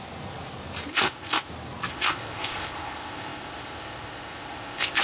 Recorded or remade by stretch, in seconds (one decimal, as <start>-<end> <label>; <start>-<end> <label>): 0.0-0.9 recorded; 0.9-1.5 remade; 1.5-1.9 recorded; 1.9-5.0 remade